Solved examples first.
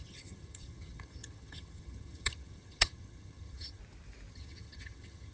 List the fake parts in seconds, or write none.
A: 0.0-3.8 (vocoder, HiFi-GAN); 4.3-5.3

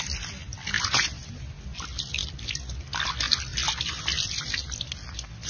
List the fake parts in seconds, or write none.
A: none

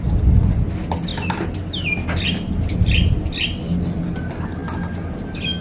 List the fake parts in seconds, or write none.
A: none

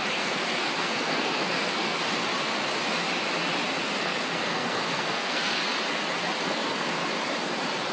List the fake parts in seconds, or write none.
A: 0.0-2.0 (codec, SNAC); 4.0-5.6; 6.4-7.0

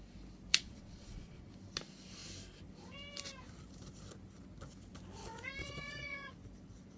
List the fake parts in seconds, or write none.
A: 0.5-1.5 (vocoder, Vocos); 5.6-6.3

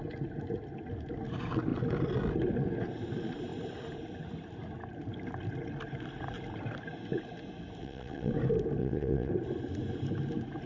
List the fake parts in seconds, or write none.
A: 7.8-8.3 (vocoder, WaveNeXt); 8.8-9.3